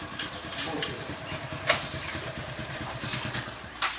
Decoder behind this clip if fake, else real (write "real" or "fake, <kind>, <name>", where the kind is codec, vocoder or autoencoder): fake, vocoder, BigVGAN v2